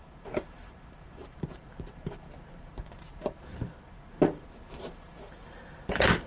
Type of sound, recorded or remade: remade